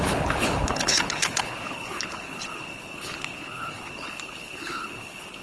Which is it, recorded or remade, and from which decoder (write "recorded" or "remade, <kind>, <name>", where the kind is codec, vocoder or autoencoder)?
remade, codec, HILCodec